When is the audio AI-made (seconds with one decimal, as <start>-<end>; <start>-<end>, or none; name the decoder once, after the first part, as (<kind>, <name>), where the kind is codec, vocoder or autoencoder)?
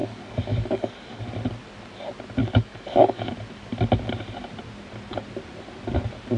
0.0-1.2 (codec, DAC); 2.4-3.3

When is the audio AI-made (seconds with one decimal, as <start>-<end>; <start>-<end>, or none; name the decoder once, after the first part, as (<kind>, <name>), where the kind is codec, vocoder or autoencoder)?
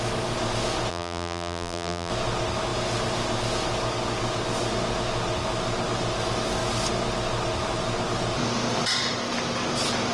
0.9-2.1 (vocoder, BigVGAN v2)